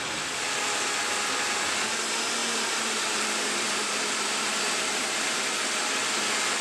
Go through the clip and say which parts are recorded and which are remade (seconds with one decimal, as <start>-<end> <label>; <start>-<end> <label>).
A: 0.0-2.4 recorded; 2.4-5.5 remade; 5.5-6.6 recorded